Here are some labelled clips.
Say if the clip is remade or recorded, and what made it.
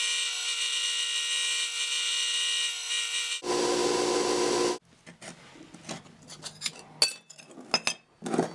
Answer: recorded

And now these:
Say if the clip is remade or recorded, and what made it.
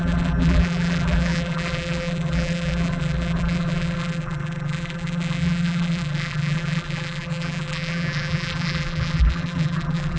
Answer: remade, vocoder, BigVGAN v2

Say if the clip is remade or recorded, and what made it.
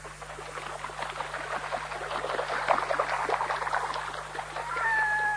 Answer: recorded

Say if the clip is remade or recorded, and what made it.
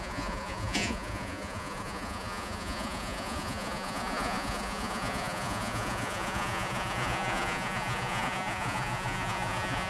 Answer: remade, vocoder, Vocos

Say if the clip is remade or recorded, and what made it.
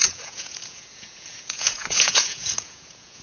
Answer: remade, vocoder, Vocos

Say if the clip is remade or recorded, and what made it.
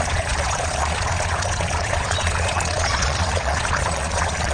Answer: remade, vocoder, Vocos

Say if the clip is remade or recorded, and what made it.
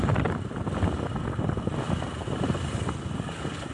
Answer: recorded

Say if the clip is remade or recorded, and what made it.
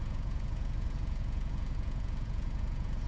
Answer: remade, vocoder, Vocos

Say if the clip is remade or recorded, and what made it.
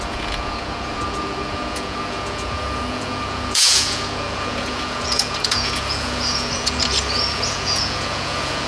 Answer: remade, vocoder, Vocos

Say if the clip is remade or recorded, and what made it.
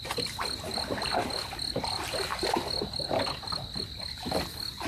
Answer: recorded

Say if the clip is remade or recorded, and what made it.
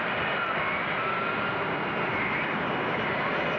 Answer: recorded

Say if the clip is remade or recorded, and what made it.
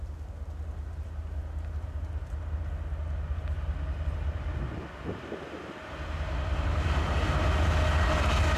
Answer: recorded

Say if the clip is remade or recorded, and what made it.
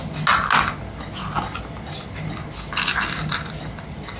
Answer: recorded